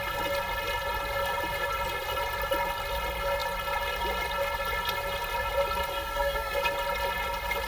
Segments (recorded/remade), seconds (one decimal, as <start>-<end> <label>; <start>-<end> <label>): 0.0-5.9 recorded; 5.9-6.6 remade; 6.6-7.7 recorded